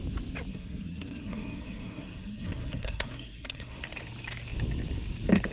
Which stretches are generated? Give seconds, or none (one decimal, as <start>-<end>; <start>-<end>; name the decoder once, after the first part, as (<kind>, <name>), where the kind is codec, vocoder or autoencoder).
0.5-3.8 (codec, SNAC)